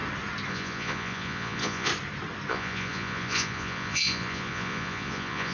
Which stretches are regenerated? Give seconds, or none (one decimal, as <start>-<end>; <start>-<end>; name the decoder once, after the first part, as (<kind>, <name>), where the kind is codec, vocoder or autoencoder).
0.5-1.9 (vocoder, Vocos); 2.5-5.5